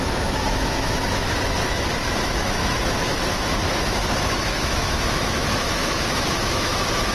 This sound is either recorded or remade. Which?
remade